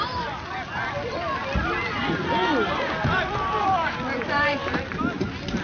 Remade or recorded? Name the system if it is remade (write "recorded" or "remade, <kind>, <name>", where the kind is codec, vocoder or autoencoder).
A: recorded